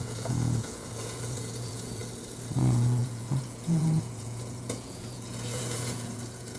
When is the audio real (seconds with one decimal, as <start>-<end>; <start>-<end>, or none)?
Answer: 2.0-2.5